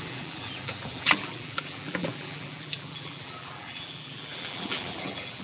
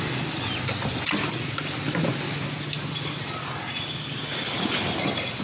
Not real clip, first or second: first